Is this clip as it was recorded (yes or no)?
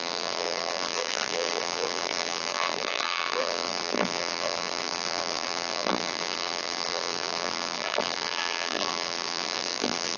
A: no